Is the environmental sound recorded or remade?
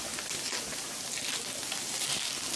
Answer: recorded